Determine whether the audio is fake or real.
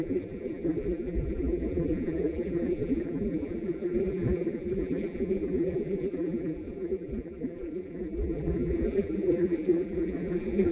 fake